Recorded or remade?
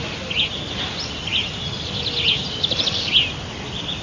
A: recorded